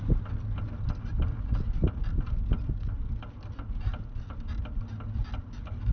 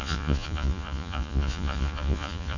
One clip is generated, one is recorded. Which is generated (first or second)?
second